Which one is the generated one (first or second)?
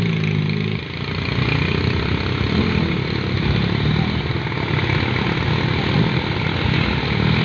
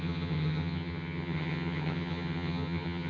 second